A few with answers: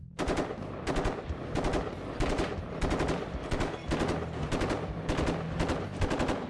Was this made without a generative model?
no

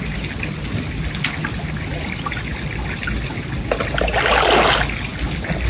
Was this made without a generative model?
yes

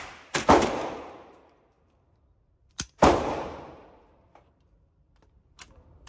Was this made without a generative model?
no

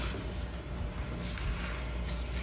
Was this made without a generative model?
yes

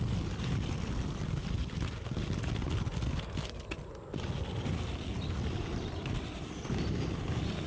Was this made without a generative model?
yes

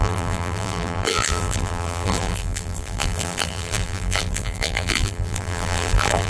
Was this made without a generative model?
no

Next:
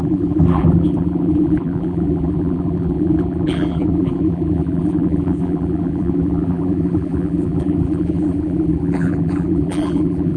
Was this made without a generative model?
no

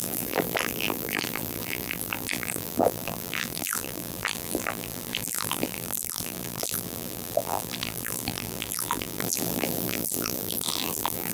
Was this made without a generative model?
no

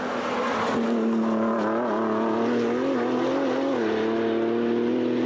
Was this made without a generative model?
yes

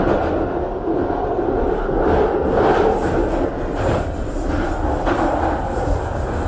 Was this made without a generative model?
yes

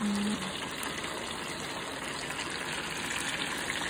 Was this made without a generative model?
yes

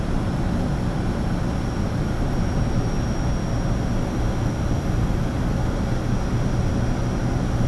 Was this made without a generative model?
yes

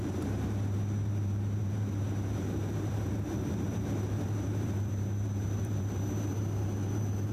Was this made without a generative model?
no